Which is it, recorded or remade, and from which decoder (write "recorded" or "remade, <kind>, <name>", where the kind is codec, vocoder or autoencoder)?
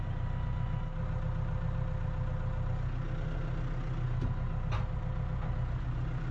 recorded